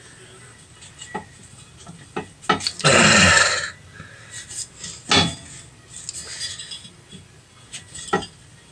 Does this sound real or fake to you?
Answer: real